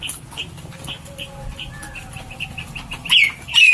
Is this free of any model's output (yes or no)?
yes